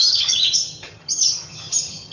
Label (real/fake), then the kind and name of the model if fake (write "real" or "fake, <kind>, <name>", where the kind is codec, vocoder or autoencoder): fake, vocoder, HiFi-GAN